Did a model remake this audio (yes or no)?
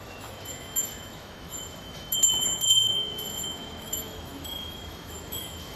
yes